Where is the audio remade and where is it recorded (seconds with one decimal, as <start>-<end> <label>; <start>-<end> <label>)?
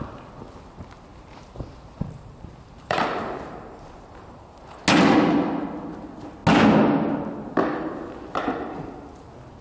0.0-1.1 recorded; 1.1-4.8 remade; 4.8-9.6 recorded